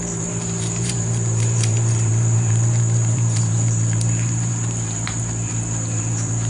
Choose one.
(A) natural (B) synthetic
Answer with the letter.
B